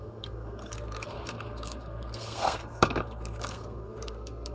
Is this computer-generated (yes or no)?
yes